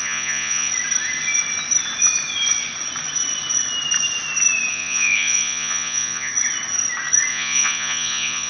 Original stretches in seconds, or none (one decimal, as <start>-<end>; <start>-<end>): 0.7-4.7; 6.3-7.3